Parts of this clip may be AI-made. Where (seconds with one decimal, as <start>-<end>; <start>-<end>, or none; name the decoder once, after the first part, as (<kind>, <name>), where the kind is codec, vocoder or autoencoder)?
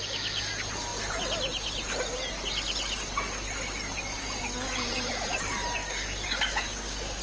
5.8-7.2 (codec, DAC)